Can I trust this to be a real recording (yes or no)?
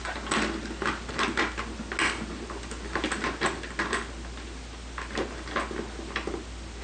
yes